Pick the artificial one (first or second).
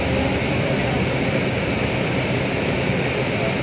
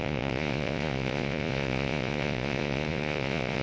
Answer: second